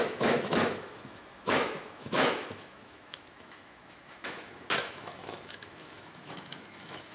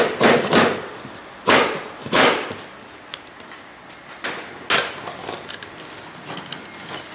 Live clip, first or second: second